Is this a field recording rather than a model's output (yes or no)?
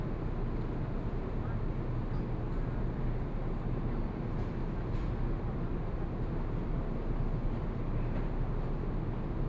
yes